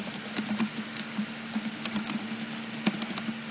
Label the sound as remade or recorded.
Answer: recorded